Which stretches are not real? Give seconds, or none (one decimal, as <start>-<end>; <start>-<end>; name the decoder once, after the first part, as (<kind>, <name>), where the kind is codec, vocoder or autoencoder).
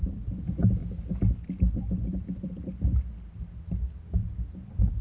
none